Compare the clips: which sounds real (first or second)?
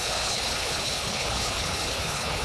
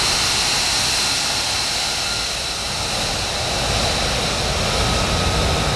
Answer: second